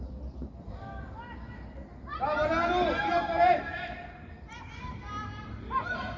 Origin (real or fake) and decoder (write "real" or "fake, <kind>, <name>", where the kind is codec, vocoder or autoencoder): real